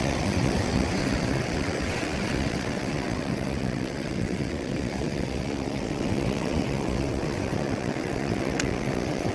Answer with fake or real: fake